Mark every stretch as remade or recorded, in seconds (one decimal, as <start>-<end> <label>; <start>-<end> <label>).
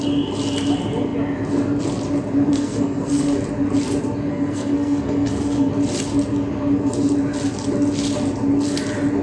0.0-2.5 recorded; 2.5-3.4 remade; 3.4-4.3 recorded; 4.3-5.7 remade; 5.7-9.2 recorded